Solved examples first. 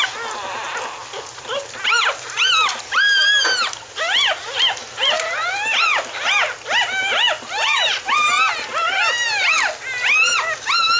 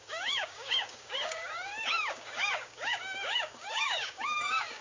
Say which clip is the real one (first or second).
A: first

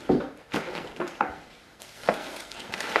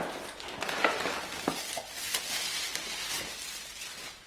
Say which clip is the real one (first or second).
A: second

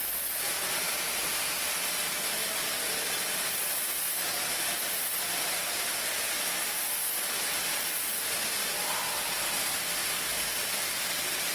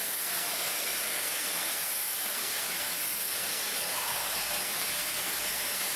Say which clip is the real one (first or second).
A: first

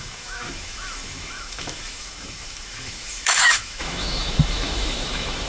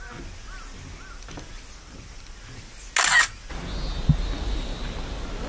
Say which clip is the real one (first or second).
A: second